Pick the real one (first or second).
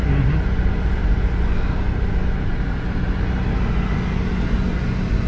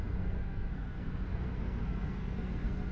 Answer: first